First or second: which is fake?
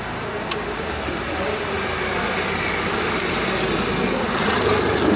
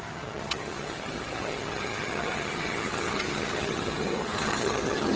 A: second